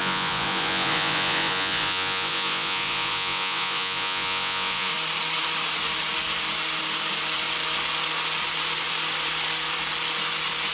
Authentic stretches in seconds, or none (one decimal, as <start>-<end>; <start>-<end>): 4.9-10.7